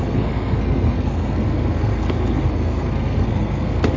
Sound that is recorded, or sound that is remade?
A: remade